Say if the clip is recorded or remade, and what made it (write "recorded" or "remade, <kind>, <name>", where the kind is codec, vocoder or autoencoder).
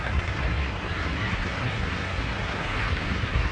remade, codec, SNAC